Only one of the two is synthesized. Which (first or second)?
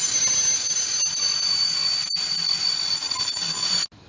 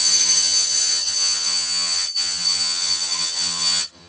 second